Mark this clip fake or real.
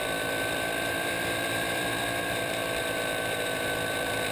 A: fake